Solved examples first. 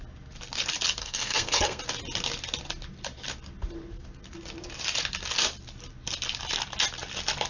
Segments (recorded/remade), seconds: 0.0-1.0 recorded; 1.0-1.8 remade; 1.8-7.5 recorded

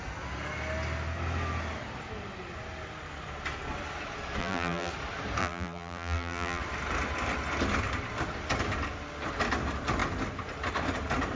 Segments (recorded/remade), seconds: 0.0-4.4 recorded; 4.4-4.9 remade; 4.9-5.4 recorded; 5.4-6.6 remade; 6.6-11.4 recorded

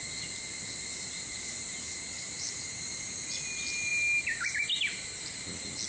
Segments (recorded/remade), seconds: 0.0-0.9 recorded; 0.9-3.1 remade; 3.1-5.9 recorded

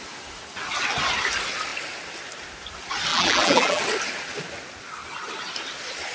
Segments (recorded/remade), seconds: 0.0-3.1 recorded; 3.1-3.8 remade; 3.8-6.1 recorded

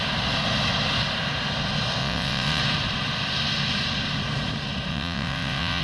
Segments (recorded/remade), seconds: 0.0-2.0 recorded; 2.0-2.6 remade; 2.6-4.9 recorded; 4.9-5.8 remade

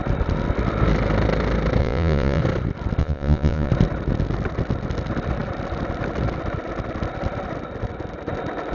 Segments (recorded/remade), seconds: 0.0-1.8 recorded; 1.8-2.4 remade; 2.4-3.0 recorded; 3.0-3.7 remade; 3.7-8.7 recorded

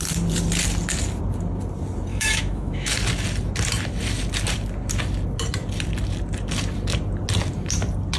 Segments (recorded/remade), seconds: 0.0-2.1 recorded; 2.1-2.9 remade; 2.9-8.2 recorded

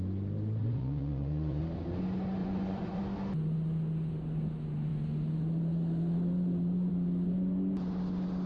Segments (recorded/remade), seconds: 0.0-0.6 recorded; 0.6-1.6 remade; 1.6-2.4 recorded; 2.4-3.0 remade; 3.0-8.5 recorded